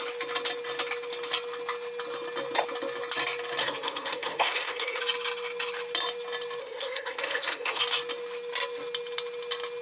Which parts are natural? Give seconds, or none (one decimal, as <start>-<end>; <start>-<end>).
0.0-3.6; 5.0-6.6; 7.8-9.8